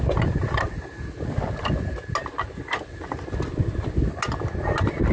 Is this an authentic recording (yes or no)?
yes